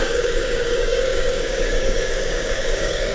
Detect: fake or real fake